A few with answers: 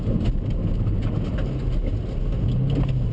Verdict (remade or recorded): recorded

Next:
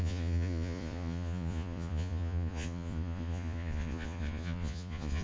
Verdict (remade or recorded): remade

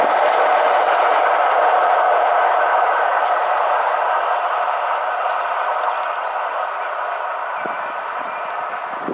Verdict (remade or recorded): recorded